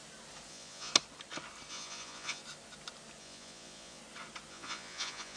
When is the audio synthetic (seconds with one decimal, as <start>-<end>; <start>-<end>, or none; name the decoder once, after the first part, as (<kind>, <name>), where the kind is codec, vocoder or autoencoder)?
0.5-0.9 (vocoder, Vocos); 1.7-2.4; 3.2-4.0; 4.5-5.4